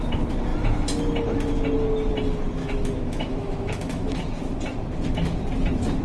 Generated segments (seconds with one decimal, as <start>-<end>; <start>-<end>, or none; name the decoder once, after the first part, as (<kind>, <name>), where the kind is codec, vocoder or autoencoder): 2.6-4.2 (autoencoder, DAC-VAE)